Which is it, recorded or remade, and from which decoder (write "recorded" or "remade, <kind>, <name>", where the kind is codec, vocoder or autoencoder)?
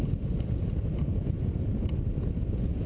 recorded